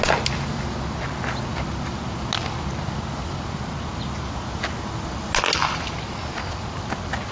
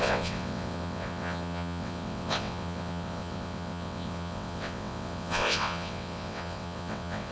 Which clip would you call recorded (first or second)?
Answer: first